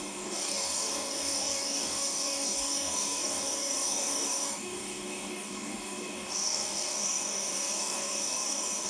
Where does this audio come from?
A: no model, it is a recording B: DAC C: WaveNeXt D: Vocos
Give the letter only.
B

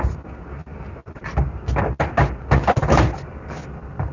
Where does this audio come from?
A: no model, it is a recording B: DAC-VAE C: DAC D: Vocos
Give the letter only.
A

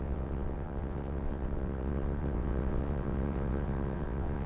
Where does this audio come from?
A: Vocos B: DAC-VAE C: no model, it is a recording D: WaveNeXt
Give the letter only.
D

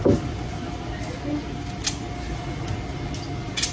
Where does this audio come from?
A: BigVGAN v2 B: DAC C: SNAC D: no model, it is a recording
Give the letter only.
D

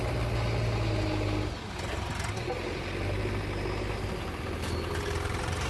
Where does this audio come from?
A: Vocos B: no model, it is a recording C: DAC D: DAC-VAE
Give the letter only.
B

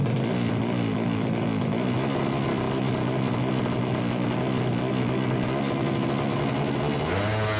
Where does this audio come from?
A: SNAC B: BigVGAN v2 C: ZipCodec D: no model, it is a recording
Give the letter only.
D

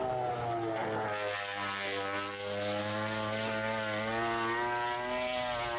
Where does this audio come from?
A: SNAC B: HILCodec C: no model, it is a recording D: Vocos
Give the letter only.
C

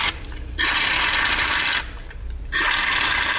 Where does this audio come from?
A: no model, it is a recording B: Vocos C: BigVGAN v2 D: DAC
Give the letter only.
C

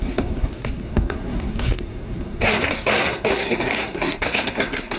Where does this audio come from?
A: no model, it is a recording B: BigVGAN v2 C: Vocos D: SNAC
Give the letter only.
D